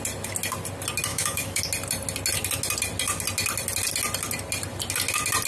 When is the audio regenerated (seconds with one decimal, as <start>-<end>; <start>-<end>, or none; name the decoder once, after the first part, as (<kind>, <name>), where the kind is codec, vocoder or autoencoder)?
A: 1.1-1.6 (autoencoder, DAC-VAE)